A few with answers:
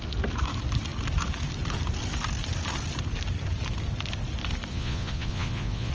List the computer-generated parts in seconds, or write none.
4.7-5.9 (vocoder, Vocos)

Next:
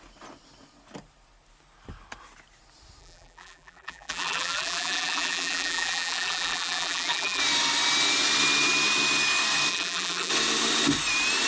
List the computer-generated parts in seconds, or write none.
3.0-7.4 (vocoder, BigVGAN v2); 9.7-10.3

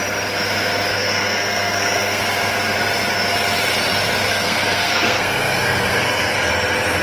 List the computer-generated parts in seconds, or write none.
0.9-2.2 (codec, SNAC); 4.3-6.5

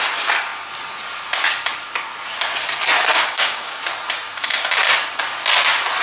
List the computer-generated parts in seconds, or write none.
3.1-3.8 (codec, DAC)

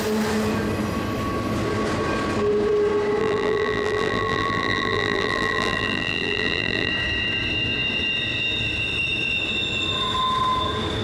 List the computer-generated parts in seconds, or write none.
3.2-6.9 (vocoder, BigVGAN v2)

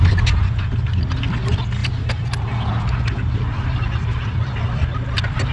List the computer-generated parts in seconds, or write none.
1.8-5.1 (vocoder, BigVGAN v2)

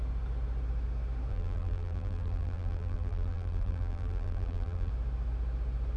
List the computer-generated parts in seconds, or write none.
1.3-4.9 (vocoder, BigVGAN v2)

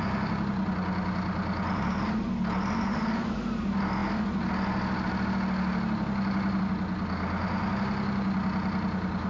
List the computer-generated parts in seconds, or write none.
none